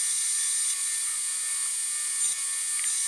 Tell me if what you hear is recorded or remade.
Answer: recorded